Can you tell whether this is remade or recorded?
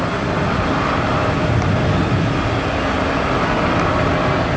recorded